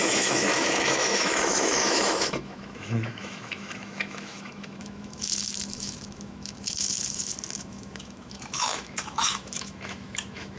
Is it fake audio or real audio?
fake